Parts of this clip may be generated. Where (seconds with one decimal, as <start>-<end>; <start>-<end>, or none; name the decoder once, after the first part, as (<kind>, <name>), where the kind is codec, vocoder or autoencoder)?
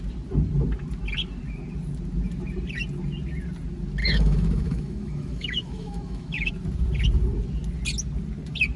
4.0-6.5 (autoencoder, DAC-VAE)